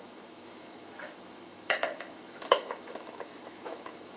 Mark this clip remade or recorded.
remade